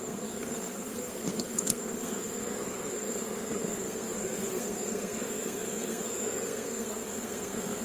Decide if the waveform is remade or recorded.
remade